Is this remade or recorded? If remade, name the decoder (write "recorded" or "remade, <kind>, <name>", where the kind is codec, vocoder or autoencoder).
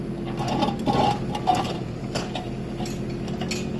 recorded